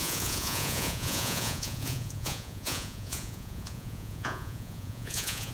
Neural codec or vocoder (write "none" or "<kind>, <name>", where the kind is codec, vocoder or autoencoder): vocoder, Vocos